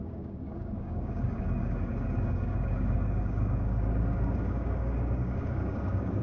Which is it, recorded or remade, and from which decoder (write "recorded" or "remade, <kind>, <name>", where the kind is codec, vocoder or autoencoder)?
remade, codec, DAC